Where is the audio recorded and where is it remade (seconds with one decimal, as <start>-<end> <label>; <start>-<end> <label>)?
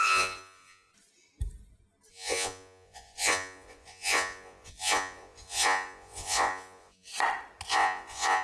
0.0-0.9 remade; 0.9-2.1 recorded; 2.1-7.1 remade; 7.1-7.7 recorded; 7.7-8.4 remade